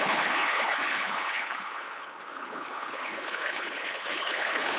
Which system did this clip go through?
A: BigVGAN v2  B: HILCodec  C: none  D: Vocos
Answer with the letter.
B